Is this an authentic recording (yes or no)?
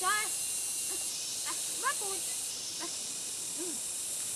yes